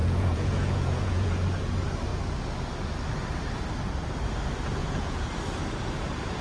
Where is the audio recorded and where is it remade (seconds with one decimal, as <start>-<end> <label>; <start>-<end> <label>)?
0.0-1.3 remade; 1.3-4.8 recorded; 4.8-5.3 remade; 5.3-6.4 recorded